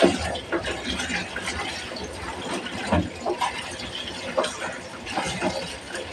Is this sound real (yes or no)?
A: yes